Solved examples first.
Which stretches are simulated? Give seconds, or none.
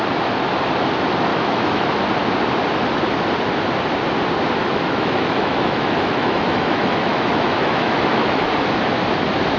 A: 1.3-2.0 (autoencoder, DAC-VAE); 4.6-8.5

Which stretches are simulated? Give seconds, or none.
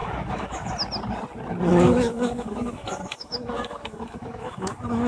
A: 0.0-0.7 (autoencoder, DAC-VAE); 1.7-5.1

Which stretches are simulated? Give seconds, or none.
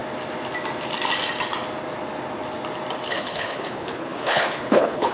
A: 3.1-5.1 (codec, HILCodec)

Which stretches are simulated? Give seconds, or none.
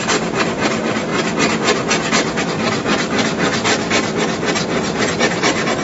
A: 0.0-1.1 (vocoder, BigVGAN v2); 2.4-5.8